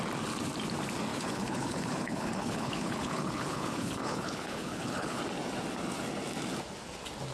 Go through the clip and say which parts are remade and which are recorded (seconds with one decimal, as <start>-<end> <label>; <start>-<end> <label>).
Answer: 0.0-1.1 recorded; 1.1-5.2 remade; 5.2-7.3 recorded